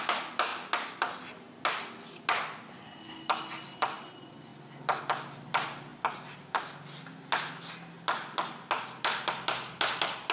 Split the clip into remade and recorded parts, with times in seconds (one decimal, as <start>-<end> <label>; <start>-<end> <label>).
0.0-10.3 recorded